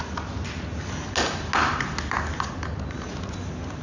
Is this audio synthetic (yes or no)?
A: no